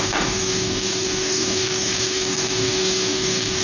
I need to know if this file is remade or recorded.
remade